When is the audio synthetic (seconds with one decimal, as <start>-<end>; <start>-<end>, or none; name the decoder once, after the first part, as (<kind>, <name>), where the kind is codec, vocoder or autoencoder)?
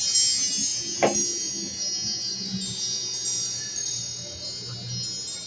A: none